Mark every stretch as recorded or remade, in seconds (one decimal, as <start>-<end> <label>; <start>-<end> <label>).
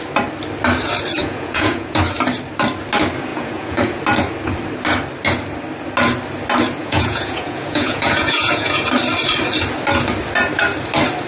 0.0-1.2 recorded; 1.2-2.0 remade; 2.0-3.3 recorded; 3.3-4.0 remade; 4.0-6.8 recorded; 6.8-8.8 remade; 8.8-11.3 recorded